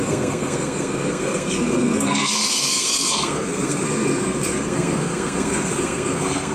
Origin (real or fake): fake